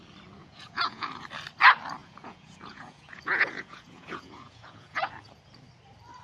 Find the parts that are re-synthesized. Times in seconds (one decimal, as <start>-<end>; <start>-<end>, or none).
0.4-1.2; 2.0-5.1